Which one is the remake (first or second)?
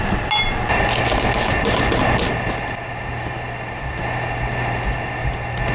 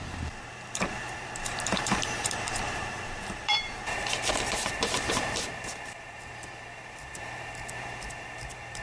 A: second